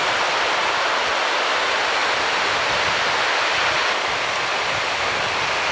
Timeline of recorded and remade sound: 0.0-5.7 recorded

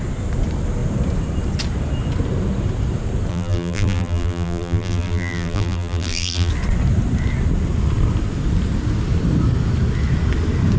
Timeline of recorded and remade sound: 0.0-3.3 recorded; 3.3-6.5 remade; 6.5-10.8 recorded

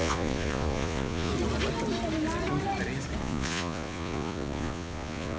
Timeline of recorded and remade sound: 0.0-1.3 remade; 1.3-3.2 recorded; 3.2-5.4 remade

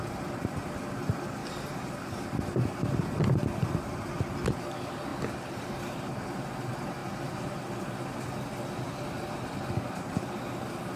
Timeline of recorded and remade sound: 0.0-1.4 recorded; 1.4-2.2 remade; 2.2-5.1 recorded; 5.1-6.2 remade; 6.2-7.0 recorded; 7.0-7.8 remade; 7.8-11.0 recorded

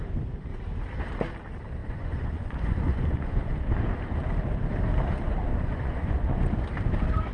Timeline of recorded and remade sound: 0.0-1.8 recorded; 1.8-3.5 remade; 3.5-5.5 recorded; 5.5-6.5 remade; 6.5-7.3 recorded

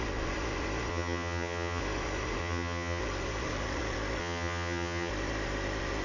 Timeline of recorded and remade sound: 0.0-0.9 recorded; 0.9-1.8 remade; 1.8-2.4 recorded; 2.4-3.0 remade; 3.0-4.2 recorded; 4.2-5.1 remade; 5.1-6.0 recorded

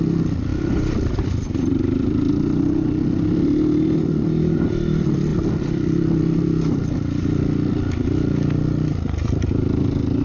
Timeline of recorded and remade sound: 0.0-0.5 recorded; 0.5-2.3 remade; 2.3-5.3 recorded; 5.3-7.4 remade; 7.4-8.9 recorded; 8.9-10.2 remade